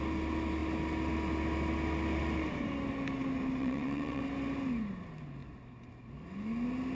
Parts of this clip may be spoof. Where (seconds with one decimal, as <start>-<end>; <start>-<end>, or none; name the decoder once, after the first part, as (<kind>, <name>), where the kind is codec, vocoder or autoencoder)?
3.6-4.2 (vocoder, WaveNeXt)